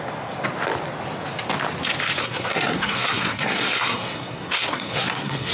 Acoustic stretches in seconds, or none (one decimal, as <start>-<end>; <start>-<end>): 0.0-2.2